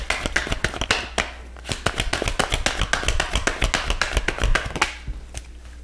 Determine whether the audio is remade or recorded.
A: recorded